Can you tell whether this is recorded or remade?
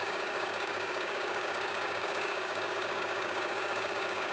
remade